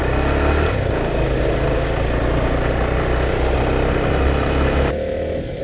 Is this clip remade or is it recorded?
recorded